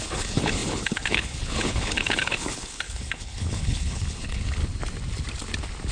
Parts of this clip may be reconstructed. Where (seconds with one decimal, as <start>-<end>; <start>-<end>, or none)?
0.0-4.6